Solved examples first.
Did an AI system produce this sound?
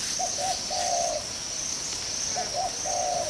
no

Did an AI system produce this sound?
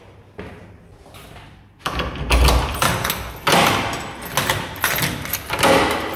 no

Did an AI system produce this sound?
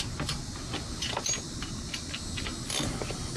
no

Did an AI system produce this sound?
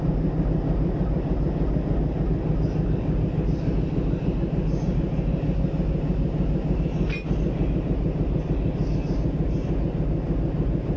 no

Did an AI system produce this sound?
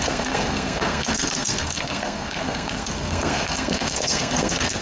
yes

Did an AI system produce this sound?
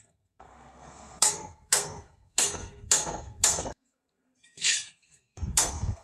yes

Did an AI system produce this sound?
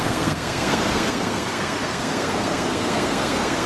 yes